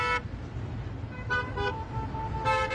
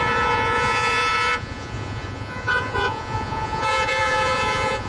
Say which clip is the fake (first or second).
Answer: second